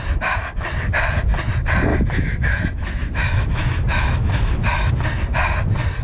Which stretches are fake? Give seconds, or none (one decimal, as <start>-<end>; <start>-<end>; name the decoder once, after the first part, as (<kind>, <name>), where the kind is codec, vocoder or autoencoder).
1.9-4.9 (autoencoder, DAC-VAE)

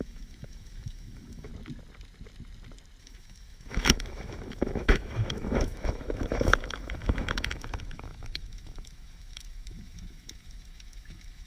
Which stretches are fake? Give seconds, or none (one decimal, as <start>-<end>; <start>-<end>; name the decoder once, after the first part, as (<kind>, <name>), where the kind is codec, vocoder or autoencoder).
0.0-1.5 (autoencoder, DAC-VAE); 3.0-11.5

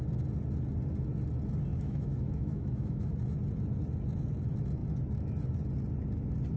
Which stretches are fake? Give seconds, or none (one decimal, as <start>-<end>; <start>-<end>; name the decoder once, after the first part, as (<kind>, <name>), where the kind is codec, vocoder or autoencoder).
1.7-3.1 (autoencoder, DAC-VAE)

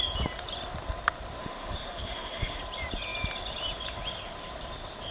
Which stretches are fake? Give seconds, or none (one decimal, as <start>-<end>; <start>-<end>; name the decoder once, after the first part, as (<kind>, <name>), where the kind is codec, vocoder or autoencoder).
1.4-2.6 (autoencoder, DAC-VAE)